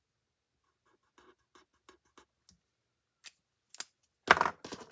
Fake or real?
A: real